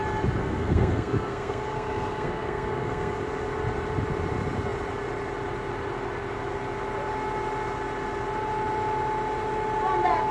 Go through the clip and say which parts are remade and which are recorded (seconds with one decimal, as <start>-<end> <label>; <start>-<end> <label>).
0.0-0.4 recorded; 0.4-3.2 remade; 3.2-10.3 recorded